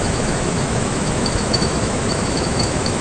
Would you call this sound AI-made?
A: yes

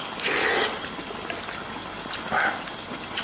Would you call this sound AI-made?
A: no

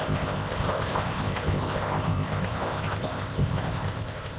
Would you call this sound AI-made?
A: yes